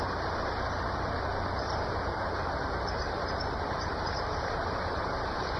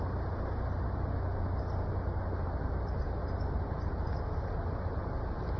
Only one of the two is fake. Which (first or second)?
first